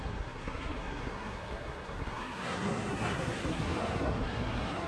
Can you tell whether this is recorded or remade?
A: remade